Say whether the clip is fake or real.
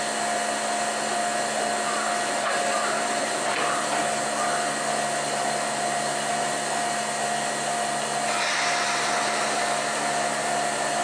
real